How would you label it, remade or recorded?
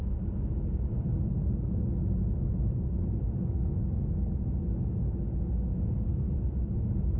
recorded